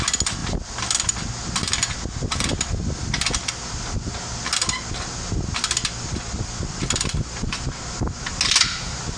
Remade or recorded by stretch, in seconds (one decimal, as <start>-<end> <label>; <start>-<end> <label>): 0.0-9.2 recorded